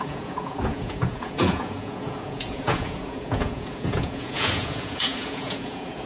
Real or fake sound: fake